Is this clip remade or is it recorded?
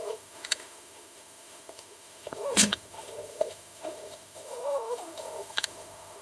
remade